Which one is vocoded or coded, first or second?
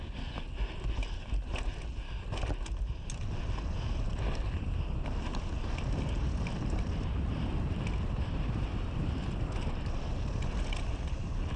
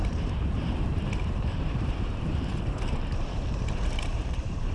second